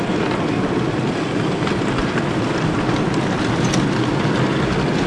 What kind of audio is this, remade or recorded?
recorded